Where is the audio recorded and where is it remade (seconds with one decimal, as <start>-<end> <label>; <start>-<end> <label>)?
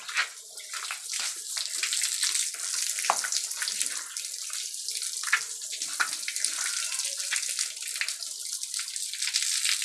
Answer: 0.0-9.8 recorded